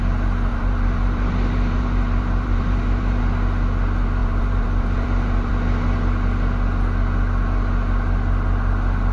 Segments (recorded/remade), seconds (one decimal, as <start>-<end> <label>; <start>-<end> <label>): 0.0-0.5 recorded; 0.5-3.2 remade; 3.2-4.2 recorded; 4.2-5.5 remade; 5.5-9.1 recorded